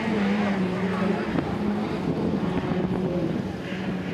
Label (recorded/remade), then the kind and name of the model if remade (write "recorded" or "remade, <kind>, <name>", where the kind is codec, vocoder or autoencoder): recorded